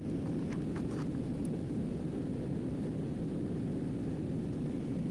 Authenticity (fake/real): real